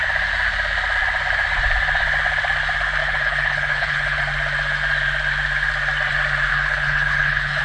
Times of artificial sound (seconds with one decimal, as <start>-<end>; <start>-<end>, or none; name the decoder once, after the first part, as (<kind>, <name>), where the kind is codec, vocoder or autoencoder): 3.0-4.2 (codec, HILCodec); 6.5-7.6